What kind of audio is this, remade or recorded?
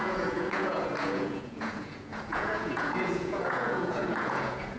remade